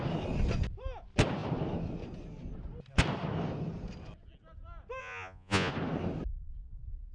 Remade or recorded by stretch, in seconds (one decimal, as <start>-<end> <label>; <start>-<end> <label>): 0.0-5.0 recorded; 5.0-5.7 remade; 5.7-7.1 recorded

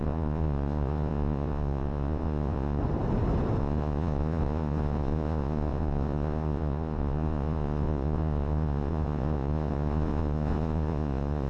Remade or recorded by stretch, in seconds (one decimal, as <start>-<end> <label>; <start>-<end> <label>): 0.0-2.8 remade; 2.8-3.6 recorded; 3.6-11.5 remade

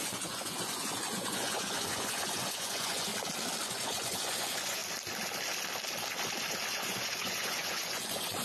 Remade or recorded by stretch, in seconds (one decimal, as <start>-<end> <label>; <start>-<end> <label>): 0.0-3.1 remade; 3.1-3.6 recorded; 3.6-4.8 remade; 4.8-6.5 recorded; 6.5-8.4 remade